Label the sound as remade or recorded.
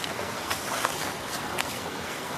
remade